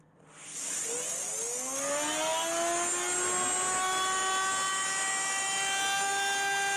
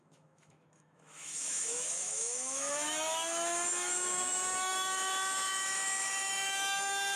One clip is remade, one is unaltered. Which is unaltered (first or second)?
first